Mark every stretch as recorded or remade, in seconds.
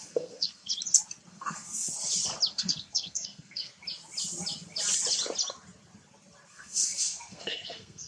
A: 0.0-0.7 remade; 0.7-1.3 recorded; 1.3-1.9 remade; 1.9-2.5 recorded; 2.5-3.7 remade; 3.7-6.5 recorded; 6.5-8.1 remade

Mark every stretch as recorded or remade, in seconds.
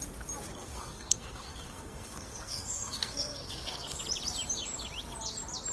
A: 0.0-0.6 recorded; 0.6-4.0 remade; 4.0-5.7 recorded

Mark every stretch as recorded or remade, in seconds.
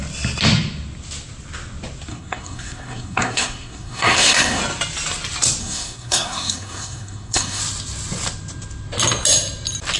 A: 0.0-2.1 recorded; 2.1-4.6 remade; 4.6-5.6 recorded; 5.6-7.6 remade; 7.6-10.0 recorded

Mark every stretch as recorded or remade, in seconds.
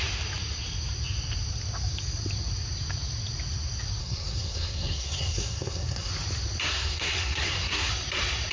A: 0.0-4.0 recorded; 4.0-6.1 remade; 6.1-6.6 recorded; 6.6-7.9 remade; 7.9-8.5 recorded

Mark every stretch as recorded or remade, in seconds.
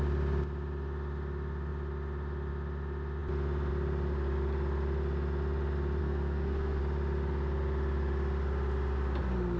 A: 0.0-6.0 recorded; 6.0-6.8 remade; 6.8-9.6 recorded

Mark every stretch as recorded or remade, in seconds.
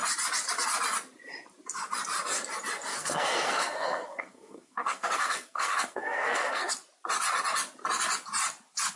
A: 0.0-2.9 recorded; 2.9-6.7 remade; 6.7-9.0 recorded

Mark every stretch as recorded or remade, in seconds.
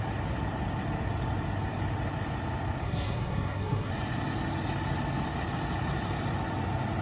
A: 0.0-2.8 recorded; 2.8-3.9 remade; 3.9-7.0 recorded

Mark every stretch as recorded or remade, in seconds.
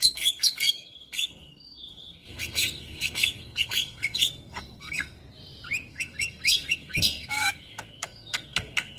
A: 0.0-5.2 remade; 5.2-5.9 recorded; 5.9-9.0 remade